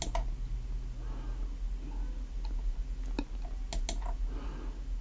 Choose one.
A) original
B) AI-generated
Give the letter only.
A